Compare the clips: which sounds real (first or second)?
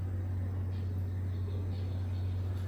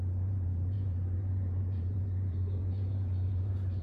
first